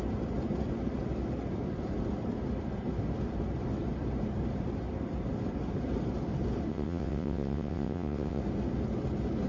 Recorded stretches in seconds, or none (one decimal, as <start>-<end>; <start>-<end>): 0.0-6.7; 8.4-9.5